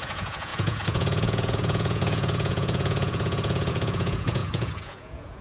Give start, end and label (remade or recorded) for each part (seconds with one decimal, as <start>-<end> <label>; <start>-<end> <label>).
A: 0.0-5.4 remade